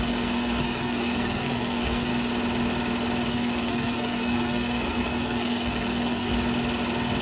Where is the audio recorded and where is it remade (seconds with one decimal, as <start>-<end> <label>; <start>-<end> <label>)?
0.0-2.1 remade; 2.1-3.3 recorded; 3.3-6.3 remade; 6.3-7.2 recorded